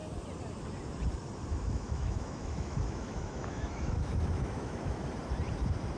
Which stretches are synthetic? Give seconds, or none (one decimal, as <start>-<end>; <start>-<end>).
1.5-5.1